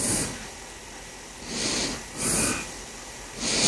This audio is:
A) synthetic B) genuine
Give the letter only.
B